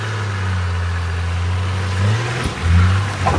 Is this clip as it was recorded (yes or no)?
yes